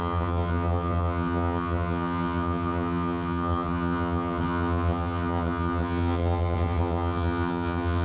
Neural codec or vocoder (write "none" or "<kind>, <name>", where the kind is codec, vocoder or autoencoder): vocoder, HiFi-GAN